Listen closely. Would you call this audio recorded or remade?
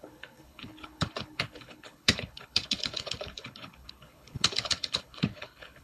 remade